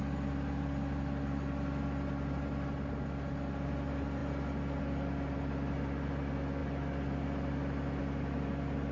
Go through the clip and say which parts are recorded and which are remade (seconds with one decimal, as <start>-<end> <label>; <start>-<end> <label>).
0.0-8.9 recorded